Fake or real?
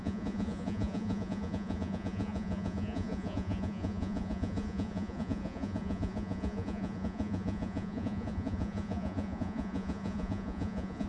fake